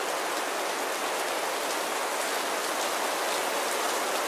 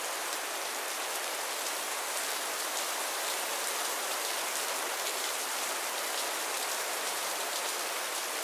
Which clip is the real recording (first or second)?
first